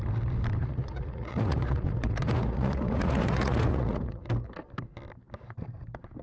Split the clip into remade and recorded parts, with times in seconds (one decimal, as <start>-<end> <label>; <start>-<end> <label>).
0.0-0.6 recorded; 0.6-4.3 remade; 4.3-6.2 recorded